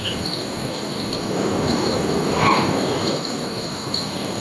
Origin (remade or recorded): remade